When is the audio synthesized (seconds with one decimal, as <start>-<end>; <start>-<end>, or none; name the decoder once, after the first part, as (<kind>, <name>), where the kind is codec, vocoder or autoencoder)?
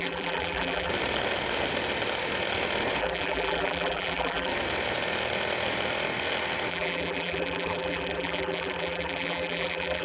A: 0.0-0.9 (vocoder, BigVGAN v2); 3.0-4.5; 6.7-10.0